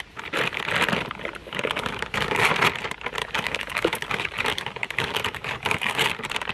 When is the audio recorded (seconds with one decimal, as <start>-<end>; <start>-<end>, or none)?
0.0-1.4; 2.5-3.2; 6.1-6.5

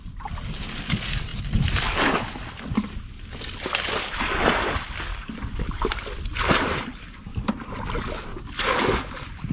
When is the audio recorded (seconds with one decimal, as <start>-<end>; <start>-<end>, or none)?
0.0-5.1; 5.9-8.3; 9.1-9.5

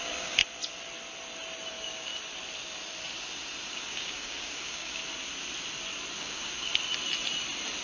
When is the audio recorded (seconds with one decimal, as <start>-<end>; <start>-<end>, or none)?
0.4-1.7; 2.1-3.7; 5.0-6.2; 6.7-7.8

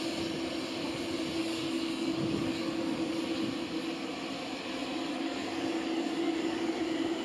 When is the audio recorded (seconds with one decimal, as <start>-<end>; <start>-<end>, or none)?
0.0-1.4; 3.2-5.0; 6.8-7.2